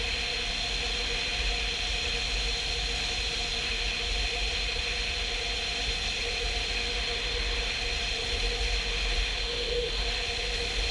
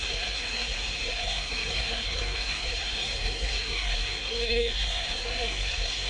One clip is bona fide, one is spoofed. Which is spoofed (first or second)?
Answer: second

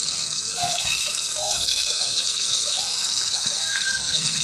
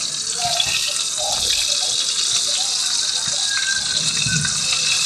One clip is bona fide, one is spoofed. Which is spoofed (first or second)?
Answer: first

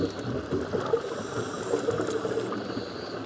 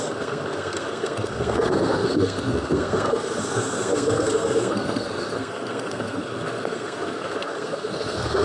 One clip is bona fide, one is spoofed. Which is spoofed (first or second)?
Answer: second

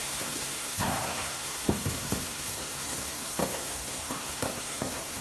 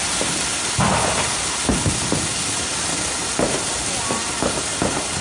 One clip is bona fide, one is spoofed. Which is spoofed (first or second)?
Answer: first